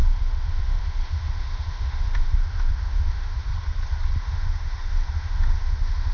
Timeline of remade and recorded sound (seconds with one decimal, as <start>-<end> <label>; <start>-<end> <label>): 0.0-3.5 remade; 3.5-4.2 recorded; 4.2-6.1 remade